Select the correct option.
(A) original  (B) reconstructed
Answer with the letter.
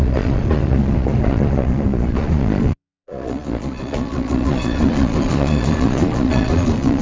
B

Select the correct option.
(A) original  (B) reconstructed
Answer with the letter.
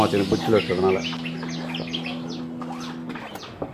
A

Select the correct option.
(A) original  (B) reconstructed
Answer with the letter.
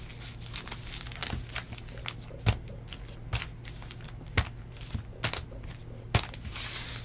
A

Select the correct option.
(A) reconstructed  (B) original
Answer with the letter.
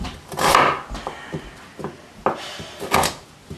B